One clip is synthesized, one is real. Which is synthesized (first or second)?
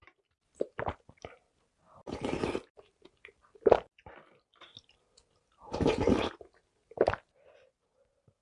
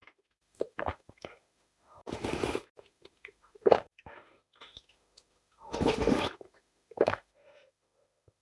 second